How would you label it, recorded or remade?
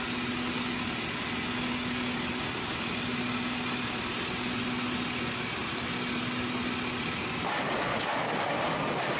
recorded